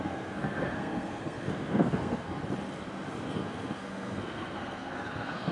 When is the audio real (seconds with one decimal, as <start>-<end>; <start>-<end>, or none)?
2.4-3.3

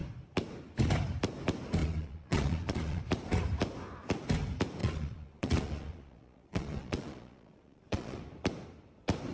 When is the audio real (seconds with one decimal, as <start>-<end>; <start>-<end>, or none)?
0.0-1.8; 3.0-4.8; 8.2-9.3

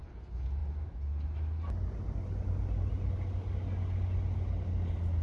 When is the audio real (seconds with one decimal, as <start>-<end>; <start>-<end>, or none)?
0.0-5.2

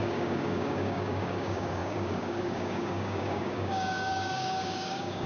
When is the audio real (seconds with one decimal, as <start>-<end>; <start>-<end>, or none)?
none